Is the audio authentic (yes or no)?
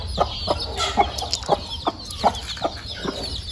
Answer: yes